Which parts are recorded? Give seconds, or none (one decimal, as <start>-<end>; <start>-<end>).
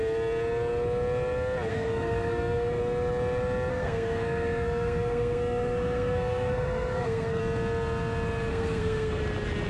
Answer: 0.0-1.7; 2.8-3.7; 7.4-8.5; 9.2-9.7